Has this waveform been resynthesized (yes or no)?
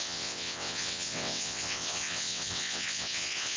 yes